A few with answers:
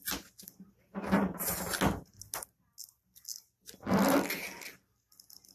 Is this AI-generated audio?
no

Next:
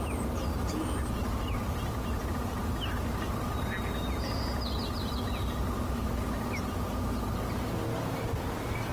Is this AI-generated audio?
no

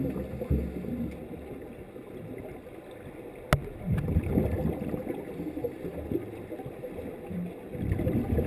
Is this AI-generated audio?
no